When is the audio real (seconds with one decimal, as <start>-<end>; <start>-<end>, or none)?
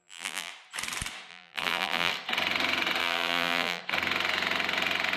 0.5-1.3; 2.1-3.0; 3.8-5.2